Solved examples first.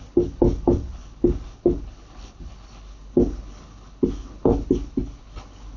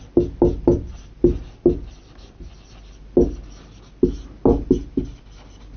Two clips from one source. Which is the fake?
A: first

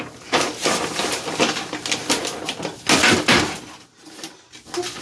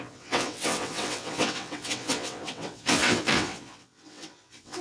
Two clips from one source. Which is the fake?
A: second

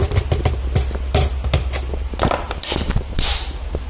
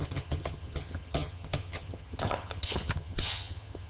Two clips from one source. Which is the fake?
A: second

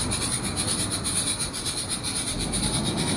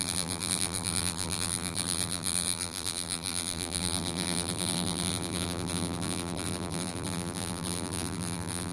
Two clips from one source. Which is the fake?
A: second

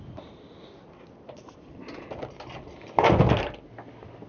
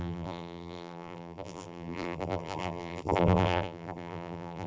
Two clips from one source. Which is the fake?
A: second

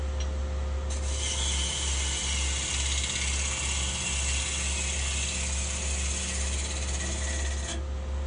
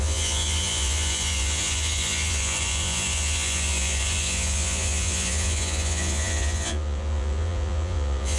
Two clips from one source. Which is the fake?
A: second